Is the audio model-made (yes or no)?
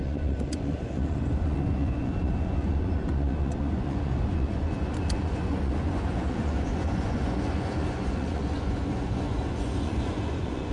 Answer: yes